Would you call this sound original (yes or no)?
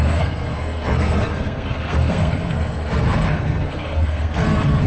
no